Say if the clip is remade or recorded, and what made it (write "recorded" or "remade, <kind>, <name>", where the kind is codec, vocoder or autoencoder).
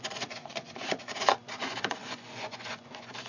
remade, vocoder, Vocos